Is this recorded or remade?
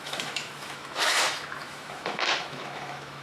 remade